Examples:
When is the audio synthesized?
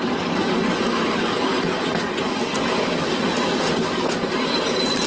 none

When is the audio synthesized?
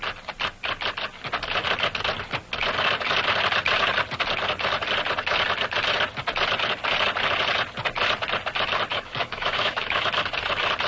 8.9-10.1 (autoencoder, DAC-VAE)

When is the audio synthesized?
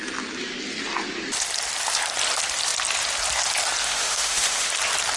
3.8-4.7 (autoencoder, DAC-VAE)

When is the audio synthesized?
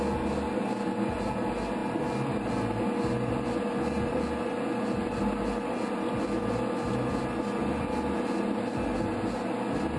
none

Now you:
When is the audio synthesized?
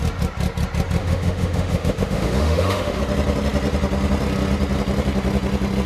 1.0-3.0 (autoencoder, DAC-VAE)